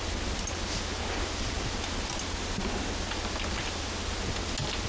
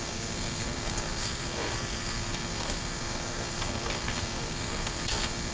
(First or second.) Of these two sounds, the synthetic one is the second